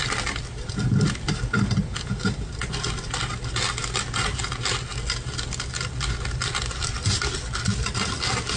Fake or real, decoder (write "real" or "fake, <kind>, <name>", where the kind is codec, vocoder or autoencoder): real